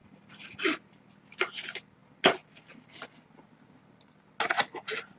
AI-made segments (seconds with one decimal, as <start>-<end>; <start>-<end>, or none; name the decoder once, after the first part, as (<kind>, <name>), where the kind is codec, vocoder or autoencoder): none